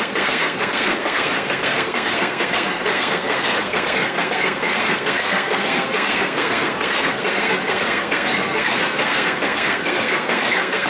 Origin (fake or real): fake